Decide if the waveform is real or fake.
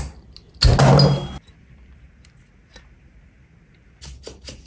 real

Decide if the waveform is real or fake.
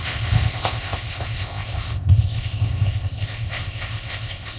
fake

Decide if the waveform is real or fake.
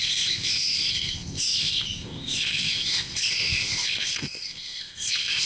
fake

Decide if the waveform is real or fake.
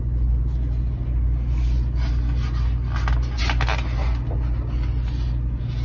real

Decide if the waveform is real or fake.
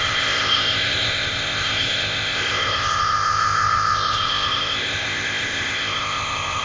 fake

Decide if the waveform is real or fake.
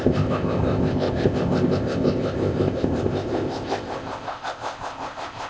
fake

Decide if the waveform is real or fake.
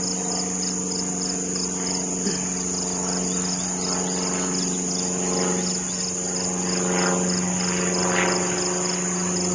real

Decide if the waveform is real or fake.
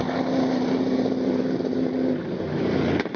real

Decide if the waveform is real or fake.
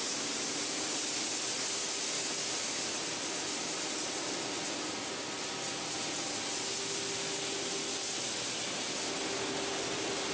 real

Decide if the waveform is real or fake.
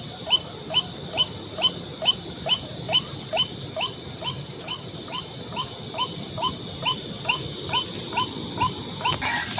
real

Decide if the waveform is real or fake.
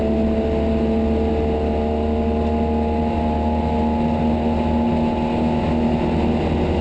real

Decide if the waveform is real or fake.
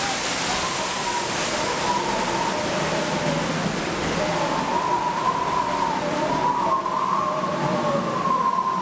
real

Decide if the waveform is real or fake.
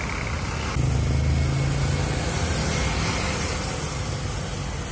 real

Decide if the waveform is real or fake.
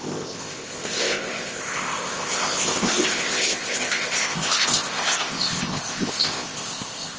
fake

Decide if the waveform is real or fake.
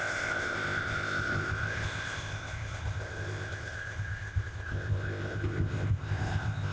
fake